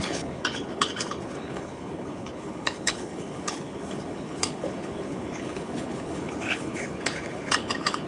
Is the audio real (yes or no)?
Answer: no